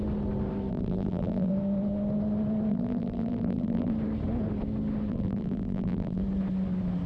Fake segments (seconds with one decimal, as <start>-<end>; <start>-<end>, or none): 0.7-1.5; 2.7-3.9; 5.1-6.2